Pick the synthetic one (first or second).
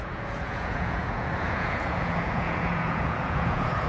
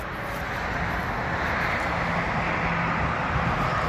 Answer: first